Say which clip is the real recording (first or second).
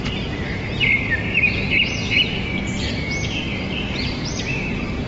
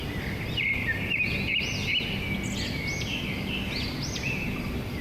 second